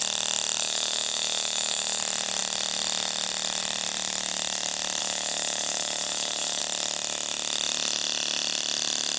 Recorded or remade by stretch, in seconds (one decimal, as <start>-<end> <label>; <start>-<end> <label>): 0.0-0.6 recorded; 0.6-2.0 remade; 2.0-5.0 recorded; 5.0-6.6 remade; 6.6-9.2 recorded

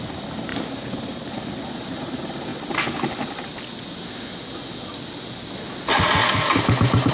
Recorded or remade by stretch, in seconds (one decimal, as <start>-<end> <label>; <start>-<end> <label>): 0.0-0.5 remade; 0.5-1.1 recorded; 1.1-2.5 remade; 2.5-7.1 recorded

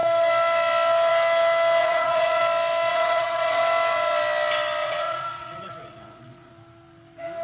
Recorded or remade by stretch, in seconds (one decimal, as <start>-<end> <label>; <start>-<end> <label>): 0.0-1.8 recorded; 1.8-2.4 remade; 2.4-2.9 recorded; 2.9-3.6 remade; 3.6-4.8 recorded; 4.8-6.5 remade; 6.5-7.4 recorded

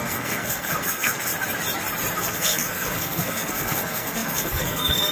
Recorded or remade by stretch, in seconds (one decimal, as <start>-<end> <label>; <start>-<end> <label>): 0.0-1.3 remade; 1.3-2.2 recorded; 2.2-5.1 remade

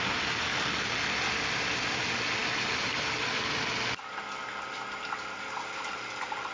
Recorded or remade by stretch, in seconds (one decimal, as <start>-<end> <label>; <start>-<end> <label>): 0.0-6.5 recorded

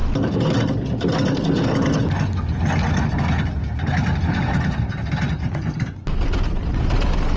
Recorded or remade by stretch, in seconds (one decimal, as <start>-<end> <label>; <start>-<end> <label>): 0.0-7.4 recorded